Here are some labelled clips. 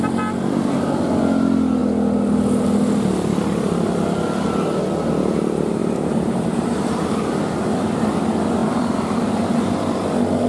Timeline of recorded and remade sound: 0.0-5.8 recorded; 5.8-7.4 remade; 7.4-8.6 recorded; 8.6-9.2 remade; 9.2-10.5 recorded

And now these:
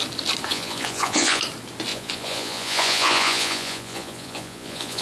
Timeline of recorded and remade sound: 0.0-0.5 recorded; 0.5-1.4 remade; 1.4-1.9 recorded; 1.9-5.0 remade

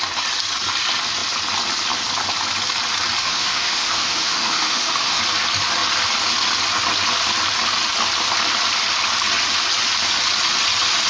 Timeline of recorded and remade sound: 0.0-3.2 recorded; 3.2-5.2 remade; 5.2-11.1 recorded

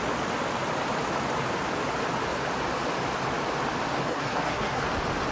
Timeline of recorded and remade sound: 0.0-4.1 recorded; 4.1-4.8 remade; 4.8-5.3 recorded

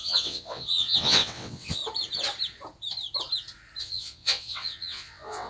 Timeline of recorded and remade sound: 0.0-1.8 remade; 1.8-3.8 recorded; 3.8-5.5 remade

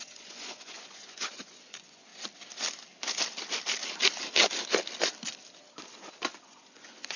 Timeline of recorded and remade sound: 0.0-2.1 remade; 2.1-6.4 recorded; 6.4-7.2 remade